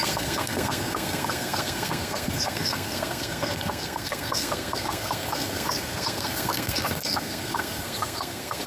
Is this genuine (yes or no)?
no